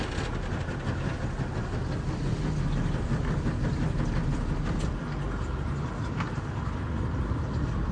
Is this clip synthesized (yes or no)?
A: no